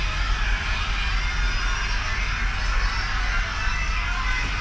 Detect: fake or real real